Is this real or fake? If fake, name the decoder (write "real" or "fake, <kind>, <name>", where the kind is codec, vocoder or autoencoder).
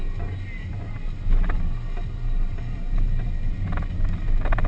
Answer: real